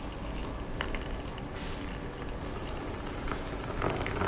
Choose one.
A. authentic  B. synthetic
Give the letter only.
A